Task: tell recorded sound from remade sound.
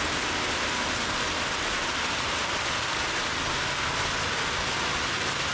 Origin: recorded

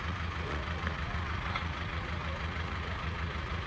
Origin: remade